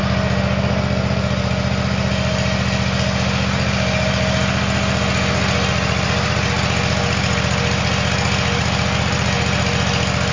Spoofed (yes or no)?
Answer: no